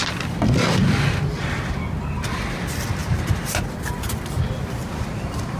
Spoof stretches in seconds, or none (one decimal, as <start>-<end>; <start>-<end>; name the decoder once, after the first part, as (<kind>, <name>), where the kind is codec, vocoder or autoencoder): 3.0-3.6 (vocoder, BigVGAN v2); 4.8-5.6